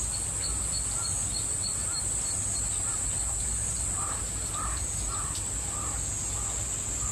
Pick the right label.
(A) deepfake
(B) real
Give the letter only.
B